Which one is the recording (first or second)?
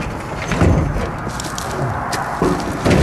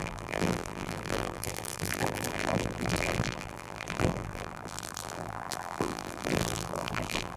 first